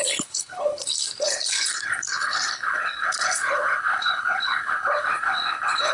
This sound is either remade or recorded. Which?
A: remade